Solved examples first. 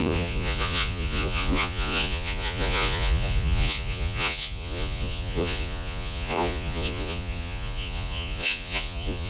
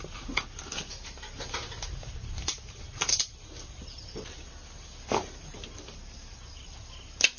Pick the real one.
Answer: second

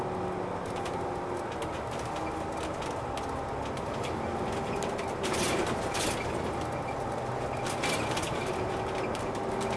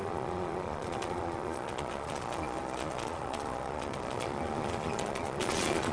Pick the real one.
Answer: first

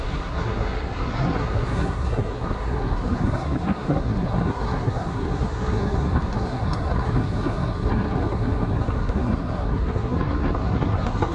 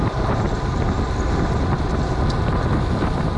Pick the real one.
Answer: second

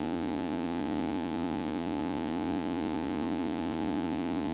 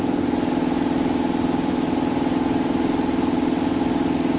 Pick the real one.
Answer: second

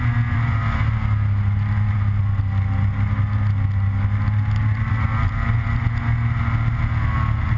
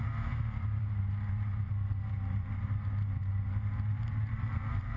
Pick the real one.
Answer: first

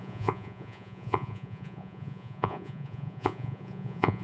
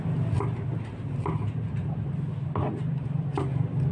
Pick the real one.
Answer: second